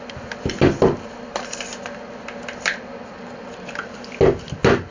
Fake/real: real